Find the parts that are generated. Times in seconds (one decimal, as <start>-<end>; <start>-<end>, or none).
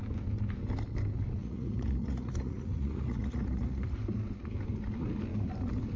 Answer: 1.4-4.0